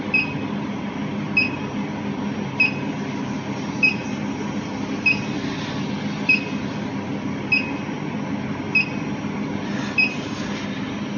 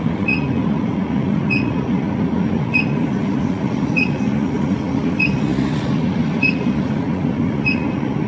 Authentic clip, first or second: first